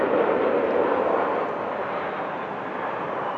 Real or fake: real